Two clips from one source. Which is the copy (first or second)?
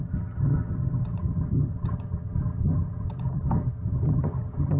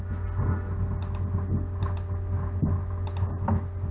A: first